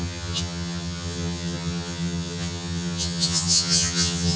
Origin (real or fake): fake